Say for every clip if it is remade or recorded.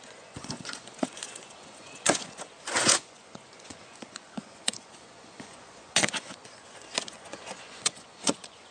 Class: remade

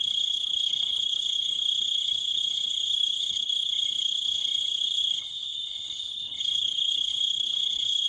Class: remade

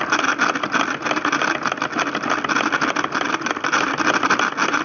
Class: recorded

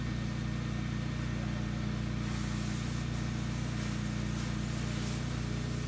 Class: recorded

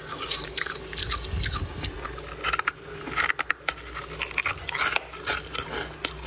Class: recorded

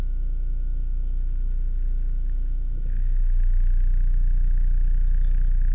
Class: remade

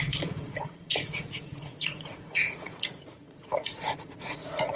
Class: remade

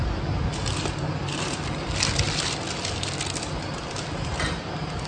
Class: recorded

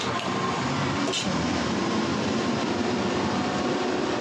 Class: remade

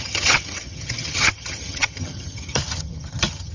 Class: remade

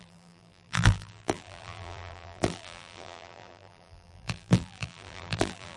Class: remade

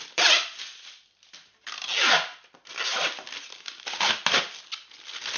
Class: recorded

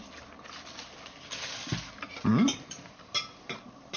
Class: recorded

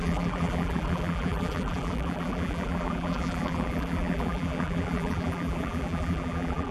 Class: remade